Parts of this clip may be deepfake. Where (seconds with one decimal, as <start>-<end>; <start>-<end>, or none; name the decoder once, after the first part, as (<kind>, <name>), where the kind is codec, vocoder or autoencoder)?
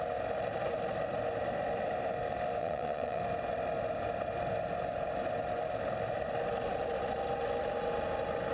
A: 2.6-3.2 (vocoder, Vocos)